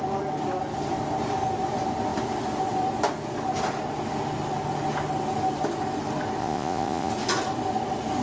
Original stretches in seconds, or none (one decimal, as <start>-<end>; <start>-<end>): 0.0-6.4; 7.1-8.2